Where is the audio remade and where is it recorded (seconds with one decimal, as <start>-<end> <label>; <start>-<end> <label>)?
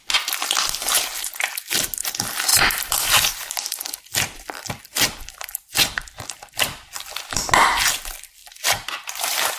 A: 0.0-2.5 recorded; 2.5-7.5 remade; 7.5-8.4 recorded; 8.4-9.6 remade